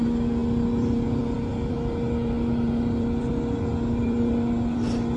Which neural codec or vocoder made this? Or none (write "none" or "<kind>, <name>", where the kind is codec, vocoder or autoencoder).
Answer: none